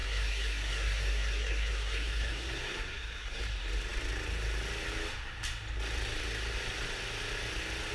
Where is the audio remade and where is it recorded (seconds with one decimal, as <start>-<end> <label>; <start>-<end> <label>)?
0.0-3.4 remade; 3.4-7.9 recorded